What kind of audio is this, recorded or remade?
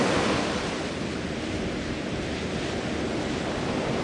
recorded